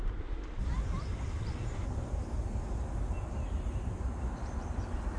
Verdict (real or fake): real